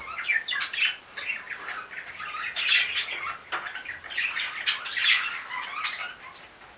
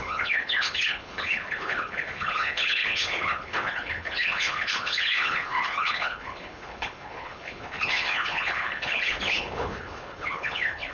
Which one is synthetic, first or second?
second